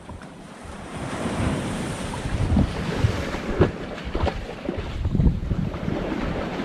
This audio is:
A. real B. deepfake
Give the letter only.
B